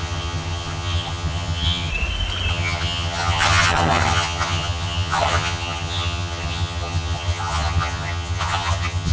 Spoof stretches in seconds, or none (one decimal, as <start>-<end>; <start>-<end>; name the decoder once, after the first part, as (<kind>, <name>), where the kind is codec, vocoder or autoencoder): 0.0-1.9 (vocoder, HiFi-GAN); 2.5-9.1